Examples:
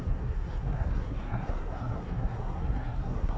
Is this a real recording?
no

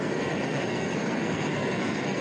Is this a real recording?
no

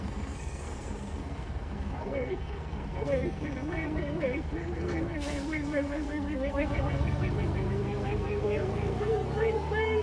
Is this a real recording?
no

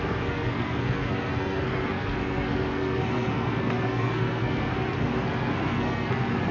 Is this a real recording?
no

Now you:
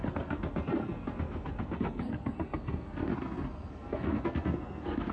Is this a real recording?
no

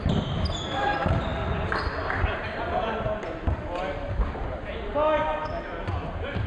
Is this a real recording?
yes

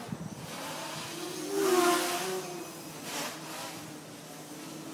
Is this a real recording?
yes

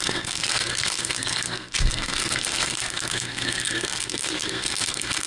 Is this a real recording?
no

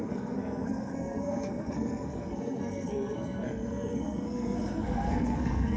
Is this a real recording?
no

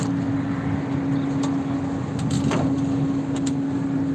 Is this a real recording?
yes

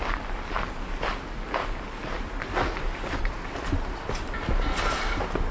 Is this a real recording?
yes